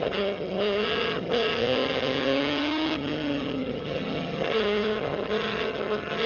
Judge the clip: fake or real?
fake